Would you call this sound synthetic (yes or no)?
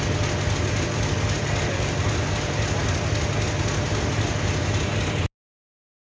no